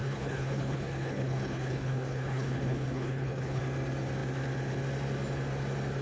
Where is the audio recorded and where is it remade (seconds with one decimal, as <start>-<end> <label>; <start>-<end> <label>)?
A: 0.0-3.6 remade; 3.6-6.0 recorded

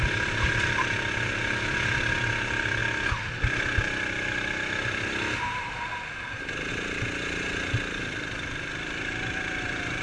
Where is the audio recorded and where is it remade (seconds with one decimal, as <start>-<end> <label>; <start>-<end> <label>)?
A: 0.0-10.0 recorded

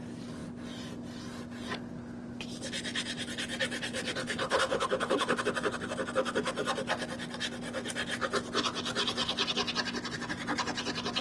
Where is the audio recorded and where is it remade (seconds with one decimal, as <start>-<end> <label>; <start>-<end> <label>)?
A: 0.0-3.9 recorded; 3.9-5.4 remade; 5.4-11.2 recorded